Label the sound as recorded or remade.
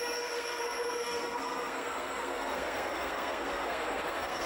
remade